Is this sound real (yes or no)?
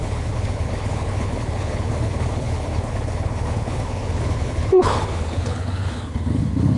no